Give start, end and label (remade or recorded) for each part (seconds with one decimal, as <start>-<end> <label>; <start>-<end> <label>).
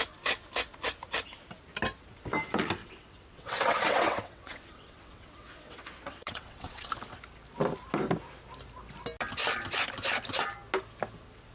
0.0-2.8 recorded; 2.8-6.9 remade; 6.9-11.5 recorded